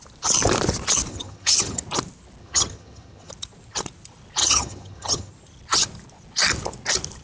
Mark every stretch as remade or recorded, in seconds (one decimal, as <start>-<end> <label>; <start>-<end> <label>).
0.0-1.1 recorded; 1.1-1.8 remade; 1.8-2.4 recorded; 2.4-3.3 remade; 3.3-4.4 recorded; 4.4-5.3 remade; 5.3-7.2 recorded